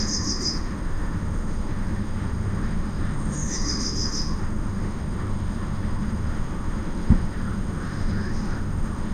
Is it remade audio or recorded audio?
remade